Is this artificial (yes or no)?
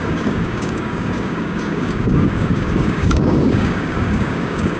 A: yes